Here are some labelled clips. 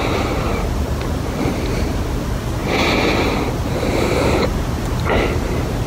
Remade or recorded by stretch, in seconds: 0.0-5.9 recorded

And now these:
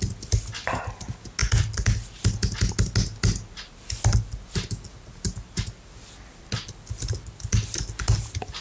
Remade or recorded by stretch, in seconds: 0.0-8.6 recorded

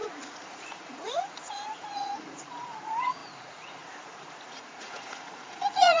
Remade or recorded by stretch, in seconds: 0.0-6.0 remade

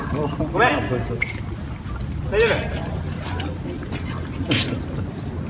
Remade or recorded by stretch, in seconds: 0.0-5.5 recorded

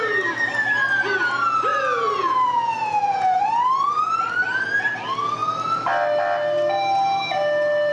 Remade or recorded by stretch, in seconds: 0.0-1.7 recorded; 1.7-3.4 remade; 3.4-7.9 recorded

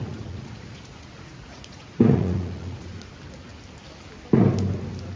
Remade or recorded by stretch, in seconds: 0.0-3.1 remade; 3.1-5.2 recorded

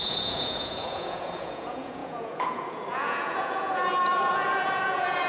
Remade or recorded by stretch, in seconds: 0.0-5.3 remade

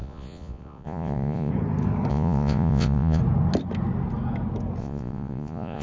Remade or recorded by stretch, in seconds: 0.0-1.5 remade; 1.5-2.1 recorded; 2.1-3.2 remade; 3.2-4.8 recorded; 4.8-5.8 remade